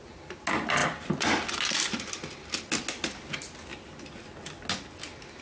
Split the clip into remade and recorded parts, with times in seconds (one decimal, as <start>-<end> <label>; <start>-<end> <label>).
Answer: 0.0-5.4 recorded